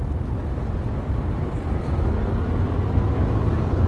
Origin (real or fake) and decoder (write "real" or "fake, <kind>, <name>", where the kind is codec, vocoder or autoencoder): real